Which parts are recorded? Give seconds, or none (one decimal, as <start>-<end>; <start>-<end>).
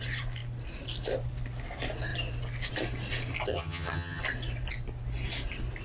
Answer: 0.0-3.5; 4.2-5.8